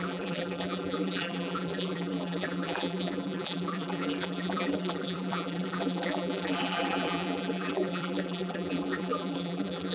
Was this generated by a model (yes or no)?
yes